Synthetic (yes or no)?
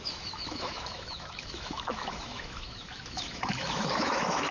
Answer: yes